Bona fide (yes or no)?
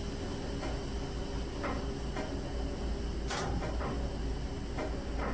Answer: yes